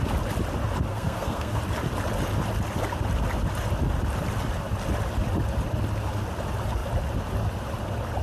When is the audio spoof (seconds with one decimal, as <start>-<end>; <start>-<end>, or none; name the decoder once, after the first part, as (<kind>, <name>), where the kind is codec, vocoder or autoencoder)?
0.9-1.6 (codec, SNAC)